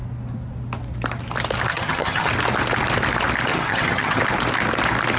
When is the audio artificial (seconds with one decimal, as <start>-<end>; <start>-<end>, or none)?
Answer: 1.7-2.3; 3.5-4.2